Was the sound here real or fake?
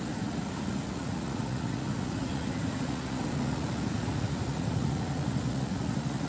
fake